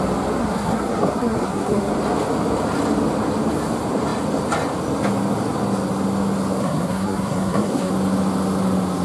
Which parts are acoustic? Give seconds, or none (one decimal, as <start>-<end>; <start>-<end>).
0.0-0.4; 1.9-6.6; 7.9-9.0